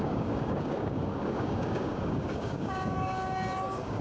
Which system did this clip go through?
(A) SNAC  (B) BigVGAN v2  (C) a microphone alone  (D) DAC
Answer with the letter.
D